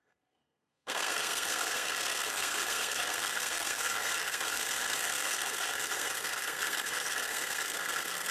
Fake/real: fake